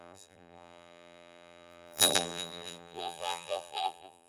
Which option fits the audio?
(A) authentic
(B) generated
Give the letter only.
B